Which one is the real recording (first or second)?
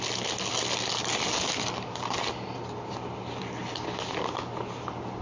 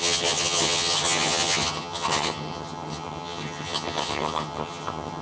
first